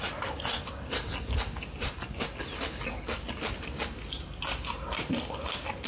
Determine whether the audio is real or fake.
real